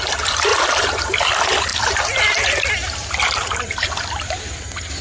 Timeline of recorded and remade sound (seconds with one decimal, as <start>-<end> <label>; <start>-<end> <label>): 0.0-0.5 recorded; 0.5-1.0 remade; 1.0-1.7 recorded; 1.7-2.6 remade; 2.6-3.0 recorded; 3.0-4.5 remade; 4.5-5.0 recorded